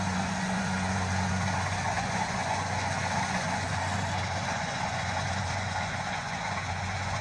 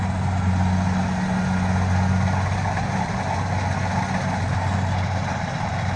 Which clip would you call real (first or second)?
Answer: second